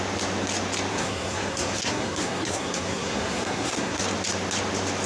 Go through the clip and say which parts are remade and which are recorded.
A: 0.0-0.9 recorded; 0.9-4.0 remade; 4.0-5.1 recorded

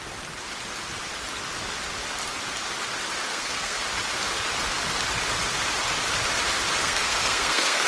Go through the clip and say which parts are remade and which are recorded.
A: 0.0-3.3 recorded; 3.3-3.8 remade; 3.8-6.8 recorded; 6.8-7.9 remade